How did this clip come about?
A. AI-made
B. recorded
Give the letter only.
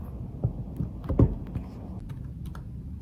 B